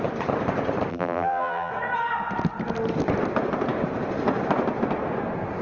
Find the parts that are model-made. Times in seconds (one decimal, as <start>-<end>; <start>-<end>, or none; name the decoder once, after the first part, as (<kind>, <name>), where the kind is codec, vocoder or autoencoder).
0.9-1.7 (vocoder, BigVGAN v2)